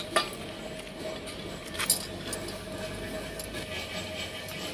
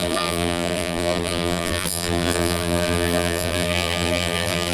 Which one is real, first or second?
first